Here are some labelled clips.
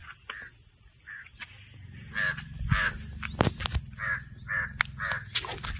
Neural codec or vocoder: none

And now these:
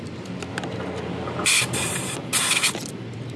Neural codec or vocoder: none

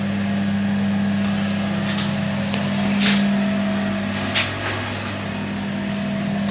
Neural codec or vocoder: none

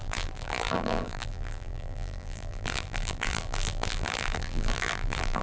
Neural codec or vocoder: vocoder, BigVGAN v2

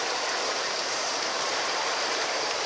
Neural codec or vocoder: vocoder, BigVGAN v2